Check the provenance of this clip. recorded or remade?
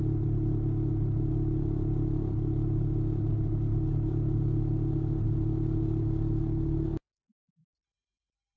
recorded